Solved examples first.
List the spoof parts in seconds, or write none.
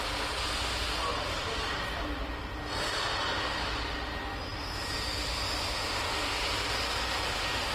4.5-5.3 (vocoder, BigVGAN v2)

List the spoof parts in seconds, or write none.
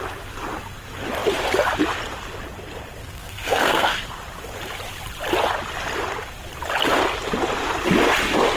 3.0-4.2 (codec, SNAC)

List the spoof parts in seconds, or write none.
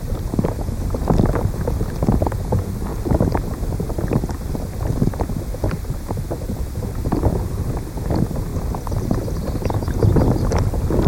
2.9-4.3 (vocoder, BigVGAN v2); 8.5-9.5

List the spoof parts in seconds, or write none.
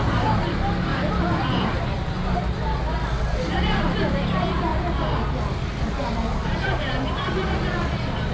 none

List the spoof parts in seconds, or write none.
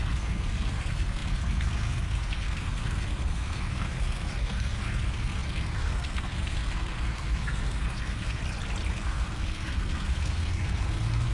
0.0-8.4 (codec, SNAC); 8.9-11.3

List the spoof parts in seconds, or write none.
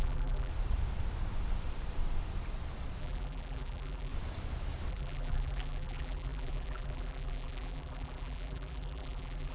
0.0-0.5 (vocoder, BigVGAN v2); 3.0-4.1; 4.9-9.5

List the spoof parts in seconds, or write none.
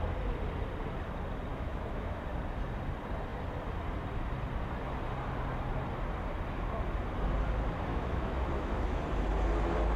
1.5-2.2 (autoencoder, DAC-VAE); 7.9-9.0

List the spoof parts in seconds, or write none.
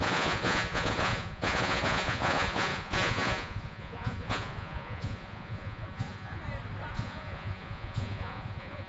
0.0-6.4 (vocoder, Vocos); 6.9-8.9